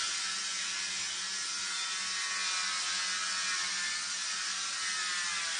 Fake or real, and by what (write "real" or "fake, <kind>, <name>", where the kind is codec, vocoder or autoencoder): real